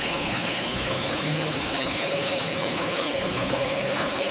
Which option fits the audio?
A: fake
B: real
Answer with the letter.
A